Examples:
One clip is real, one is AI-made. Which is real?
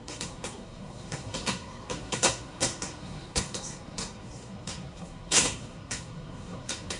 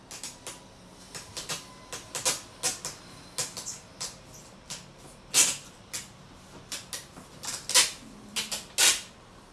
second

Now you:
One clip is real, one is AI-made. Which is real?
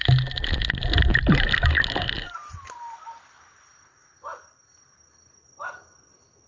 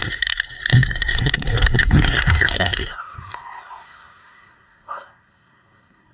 first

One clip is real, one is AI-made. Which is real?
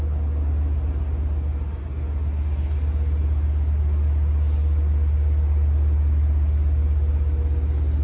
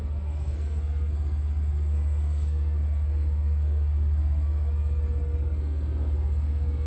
first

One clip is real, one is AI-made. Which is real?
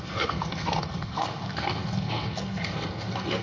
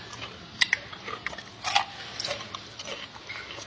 second